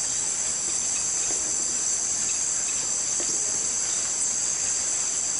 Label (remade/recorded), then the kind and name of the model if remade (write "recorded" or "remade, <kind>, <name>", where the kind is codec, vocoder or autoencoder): recorded